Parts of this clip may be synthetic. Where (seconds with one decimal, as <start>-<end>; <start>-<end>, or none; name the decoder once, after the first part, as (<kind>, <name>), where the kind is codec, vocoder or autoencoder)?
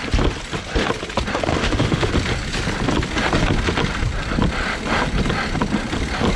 1.5-2.1 (autoencoder, DAC-VAE)